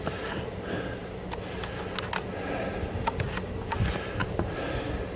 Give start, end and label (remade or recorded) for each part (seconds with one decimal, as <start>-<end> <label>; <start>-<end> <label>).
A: 0.0-5.2 recorded